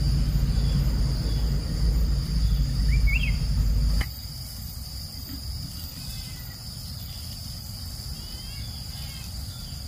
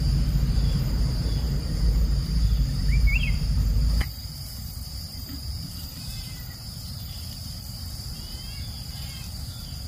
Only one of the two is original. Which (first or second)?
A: first